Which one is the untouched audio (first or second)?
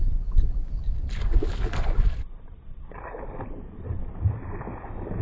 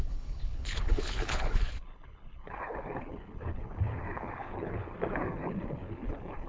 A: first